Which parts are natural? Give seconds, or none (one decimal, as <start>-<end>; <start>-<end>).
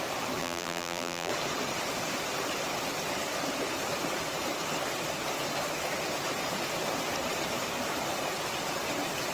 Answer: 0.0-0.4; 1.3-9.3